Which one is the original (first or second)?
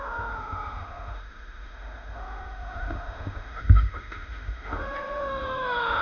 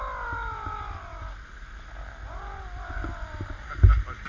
second